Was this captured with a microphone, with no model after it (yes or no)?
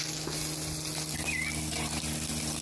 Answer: yes